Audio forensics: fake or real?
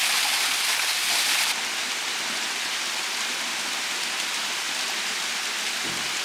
real